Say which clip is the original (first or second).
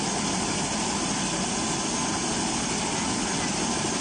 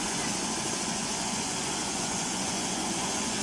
first